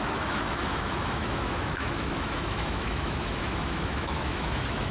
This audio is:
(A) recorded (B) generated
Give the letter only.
B